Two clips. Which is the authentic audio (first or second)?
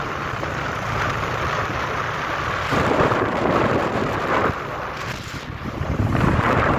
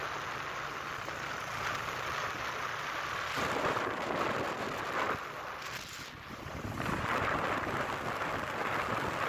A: second